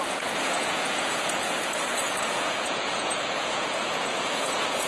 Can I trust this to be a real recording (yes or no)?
no